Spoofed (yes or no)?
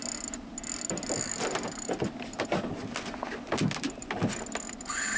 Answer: no